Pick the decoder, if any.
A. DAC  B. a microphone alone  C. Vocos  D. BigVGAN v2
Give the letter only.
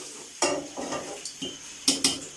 B